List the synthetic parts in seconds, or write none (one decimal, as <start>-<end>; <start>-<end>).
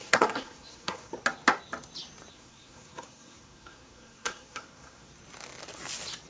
0.0-1.1; 2.3-5.1